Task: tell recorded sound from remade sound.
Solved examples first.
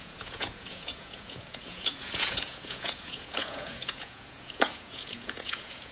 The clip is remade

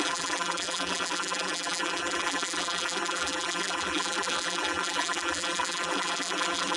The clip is remade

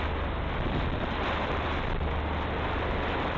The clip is recorded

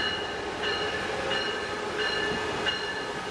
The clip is recorded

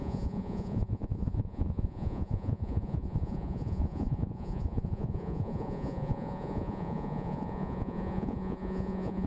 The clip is remade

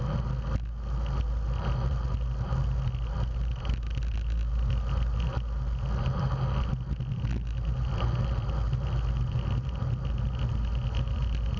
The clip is recorded